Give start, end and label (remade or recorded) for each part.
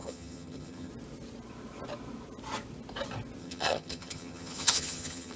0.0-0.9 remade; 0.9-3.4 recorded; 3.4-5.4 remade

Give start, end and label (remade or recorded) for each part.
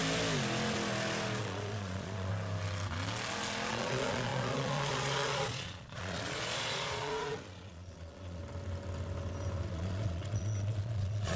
0.0-1.4 recorded; 1.4-2.3 remade; 2.3-3.7 recorded; 3.7-8.4 remade; 8.4-9.7 recorded; 9.7-11.4 remade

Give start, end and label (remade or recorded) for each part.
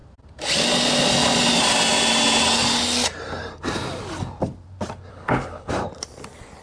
0.0-5.1 recorded; 5.1-5.7 remade; 5.7-6.6 recorded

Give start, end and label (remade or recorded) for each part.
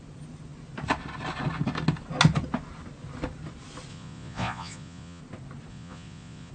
0.0-3.9 recorded; 3.9-5.2 remade; 5.2-5.7 recorded; 5.7-6.5 remade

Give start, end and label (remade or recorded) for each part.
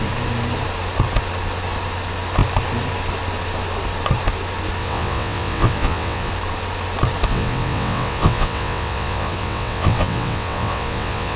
0.0-4.8 recorded; 4.8-6.3 remade; 6.3-7.3 recorded; 7.3-11.4 remade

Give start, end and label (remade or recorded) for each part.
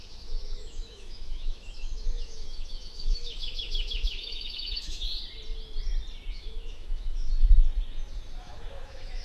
0.0-5.1 remade; 5.1-6.3 recorded; 6.3-7.3 remade; 7.3-8.4 recorded; 8.4-9.2 remade